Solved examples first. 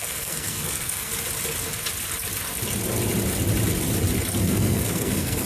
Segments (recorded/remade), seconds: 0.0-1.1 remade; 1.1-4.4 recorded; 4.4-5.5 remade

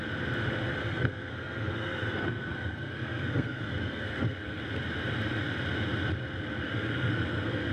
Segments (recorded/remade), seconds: 0.0-0.8 recorded; 0.8-4.6 remade; 4.6-6.6 recorded; 6.6-7.7 remade

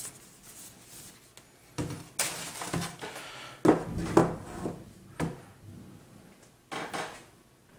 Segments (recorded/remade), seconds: 0.0-7.8 recorded

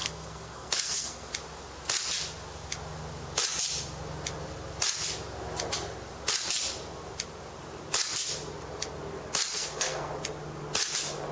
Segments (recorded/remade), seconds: 0.0-1.3 remade; 1.3-9.5 recorded; 9.5-10.1 remade; 10.1-11.3 recorded